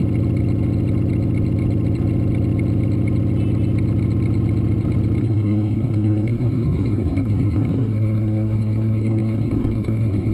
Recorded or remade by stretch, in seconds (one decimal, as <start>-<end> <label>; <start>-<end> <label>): 0.0-5.2 recorded; 5.2-10.3 remade